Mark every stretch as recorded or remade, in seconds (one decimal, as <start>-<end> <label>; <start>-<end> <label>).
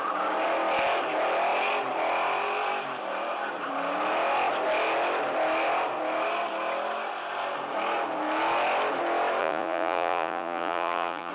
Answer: 0.0-9.4 recorded; 9.4-11.3 remade